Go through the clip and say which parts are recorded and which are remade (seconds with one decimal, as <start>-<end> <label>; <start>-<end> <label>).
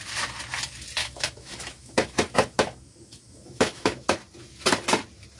0.0-1.0 recorded; 1.0-4.2 remade; 4.2-5.4 recorded